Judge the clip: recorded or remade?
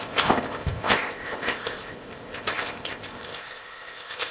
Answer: remade